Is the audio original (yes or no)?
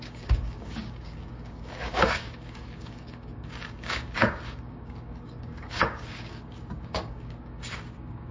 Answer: no